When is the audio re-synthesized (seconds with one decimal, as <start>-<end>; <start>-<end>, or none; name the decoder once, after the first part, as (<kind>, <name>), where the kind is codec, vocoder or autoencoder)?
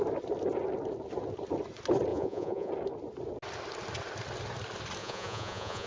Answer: 2.1-2.7 (vocoder, Vocos); 5.0-5.9